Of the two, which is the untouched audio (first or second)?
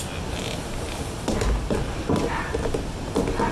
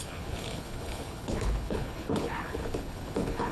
first